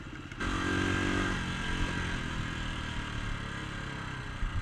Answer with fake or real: real